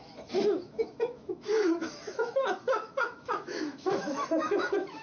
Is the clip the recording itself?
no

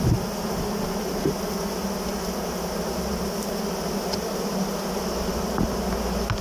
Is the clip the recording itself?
yes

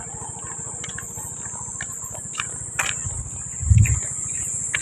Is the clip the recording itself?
yes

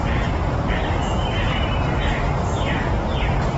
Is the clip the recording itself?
yes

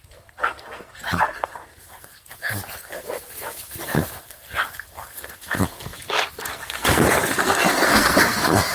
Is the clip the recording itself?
no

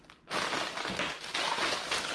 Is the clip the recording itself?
yes